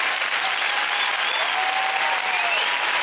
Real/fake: real